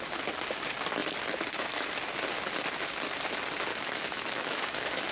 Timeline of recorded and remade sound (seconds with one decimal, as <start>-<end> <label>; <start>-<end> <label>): 0.0-3.7 recorded; 3.7-5.1 remade